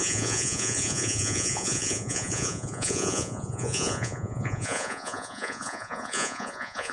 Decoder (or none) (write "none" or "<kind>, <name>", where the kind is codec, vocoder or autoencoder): vocoder, Vocos